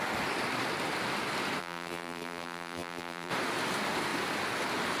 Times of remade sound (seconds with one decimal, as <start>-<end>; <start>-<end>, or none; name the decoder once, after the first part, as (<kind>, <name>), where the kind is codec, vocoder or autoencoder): 1.6-3.3 (vocoder, BigVGAN v2)